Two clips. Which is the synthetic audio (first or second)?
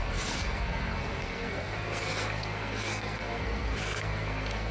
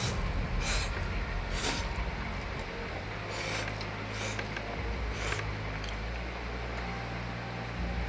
first